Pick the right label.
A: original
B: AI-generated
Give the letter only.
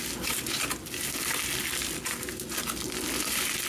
A